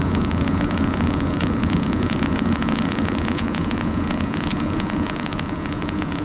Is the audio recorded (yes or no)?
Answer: no